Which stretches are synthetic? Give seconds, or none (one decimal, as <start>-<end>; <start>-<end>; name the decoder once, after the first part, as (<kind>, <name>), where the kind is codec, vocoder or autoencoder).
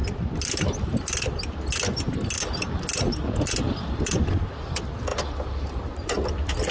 none